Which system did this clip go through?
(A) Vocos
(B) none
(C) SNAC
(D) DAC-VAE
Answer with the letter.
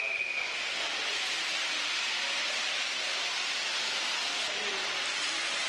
B